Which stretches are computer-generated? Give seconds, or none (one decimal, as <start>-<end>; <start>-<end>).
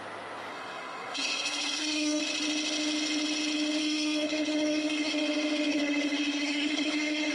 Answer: 0.5-2.2; 3.8-5.1; 5.7-7.3